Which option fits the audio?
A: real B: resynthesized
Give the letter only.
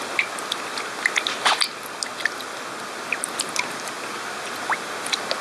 A